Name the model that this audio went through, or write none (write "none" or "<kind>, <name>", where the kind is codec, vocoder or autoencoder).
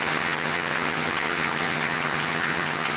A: vocoder, HiFi-GAN